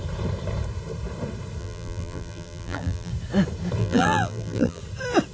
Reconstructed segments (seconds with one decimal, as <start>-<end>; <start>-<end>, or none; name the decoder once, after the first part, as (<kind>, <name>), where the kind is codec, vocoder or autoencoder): 1.6-3.1 (vocoder, BigVGAN v2); 3.8-4.8